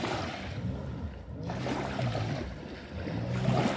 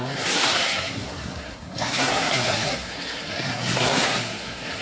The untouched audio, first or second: first